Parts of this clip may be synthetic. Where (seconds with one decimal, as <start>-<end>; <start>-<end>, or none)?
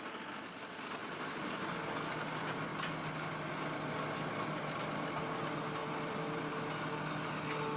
1.0-1.6; 5.8-6.5